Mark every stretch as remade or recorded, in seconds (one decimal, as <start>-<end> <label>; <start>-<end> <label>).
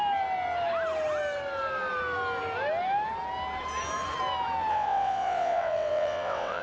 0.0-4.7 recorded; 4.7-6.6 remade